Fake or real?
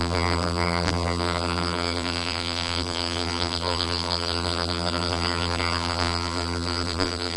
fake